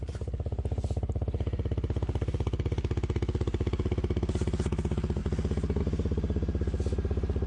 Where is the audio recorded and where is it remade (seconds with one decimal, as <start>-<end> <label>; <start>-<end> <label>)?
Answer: 0.0-7.5 recorded